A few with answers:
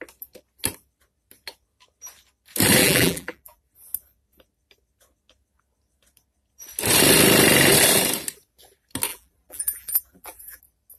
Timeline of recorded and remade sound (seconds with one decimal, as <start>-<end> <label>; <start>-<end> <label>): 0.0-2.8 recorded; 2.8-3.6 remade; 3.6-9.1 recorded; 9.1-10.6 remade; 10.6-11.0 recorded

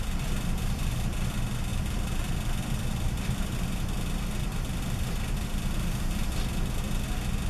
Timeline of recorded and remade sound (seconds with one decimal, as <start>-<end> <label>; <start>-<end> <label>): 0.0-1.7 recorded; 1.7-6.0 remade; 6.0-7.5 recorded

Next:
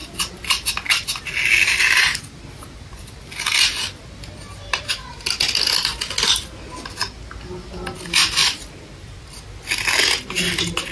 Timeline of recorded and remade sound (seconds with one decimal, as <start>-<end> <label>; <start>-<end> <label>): 0.0-8.4 recorded; 8.4-9.2 remade; 9.2-10.9 recorded

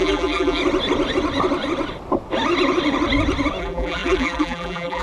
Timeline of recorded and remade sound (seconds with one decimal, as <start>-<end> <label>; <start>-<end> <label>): 0.0-0.6 remade; 0.6-3.6 recorded; 3.6-5.0 remade

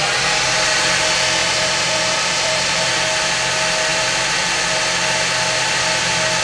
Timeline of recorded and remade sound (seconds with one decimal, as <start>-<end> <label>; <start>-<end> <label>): 0.0-1.4 recorded; 1.4-2.9 remade; 2.9-3.9 recorded; 3.9-4.5 remade; 4.5-6.4 recorded

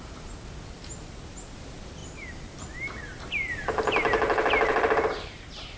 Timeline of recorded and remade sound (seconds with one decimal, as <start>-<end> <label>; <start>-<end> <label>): 0.0-2.0 recorded; 2.0-5.8 remade

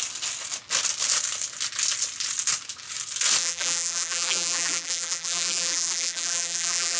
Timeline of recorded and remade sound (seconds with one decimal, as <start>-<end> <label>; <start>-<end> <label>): 0.0-3.4 recorded; 3.4-7.0 remade